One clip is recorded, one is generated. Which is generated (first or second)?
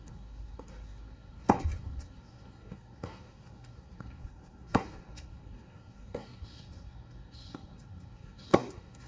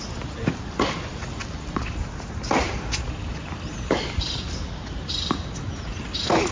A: first